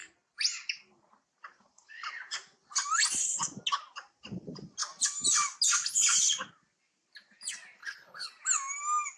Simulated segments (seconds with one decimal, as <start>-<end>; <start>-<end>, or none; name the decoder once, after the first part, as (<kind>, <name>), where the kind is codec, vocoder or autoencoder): 7.8-8.3 (codec, HILCodec)